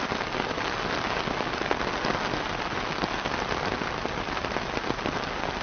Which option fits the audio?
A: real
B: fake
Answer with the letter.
A